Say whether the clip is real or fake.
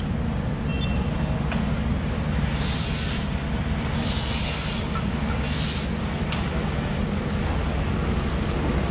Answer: real